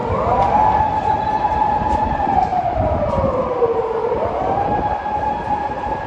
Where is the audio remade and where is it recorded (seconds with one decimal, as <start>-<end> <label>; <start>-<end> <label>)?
0.0-0.8 recorded; 0.8-2.5 remade; 2.5-3.1 recorded; 3.1-3.7 remade; 3.7-5.5 recorded; 5.5-6.1 remade